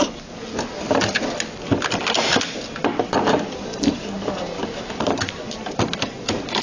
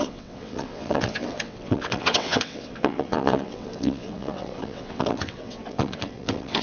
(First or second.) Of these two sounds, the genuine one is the first